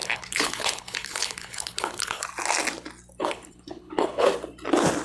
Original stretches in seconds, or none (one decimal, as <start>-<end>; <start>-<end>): 2.2-3.2; 4.3-5.0